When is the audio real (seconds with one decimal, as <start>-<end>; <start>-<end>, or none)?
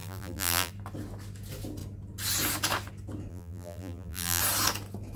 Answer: 0.7-3.3; 4.4-5.2